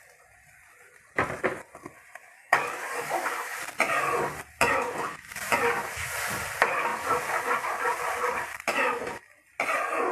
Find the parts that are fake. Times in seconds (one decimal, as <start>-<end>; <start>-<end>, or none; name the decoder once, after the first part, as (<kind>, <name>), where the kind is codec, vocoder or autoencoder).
2.2-3.6 (codec, DAC)